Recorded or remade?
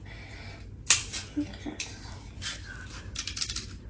recorded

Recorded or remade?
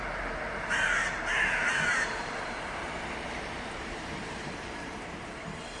remade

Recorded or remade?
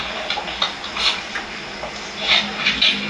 recorded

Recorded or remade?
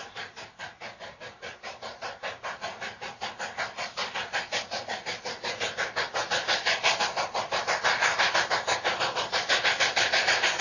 recorded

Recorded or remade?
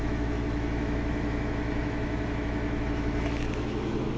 remade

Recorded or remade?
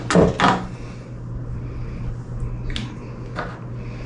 recorded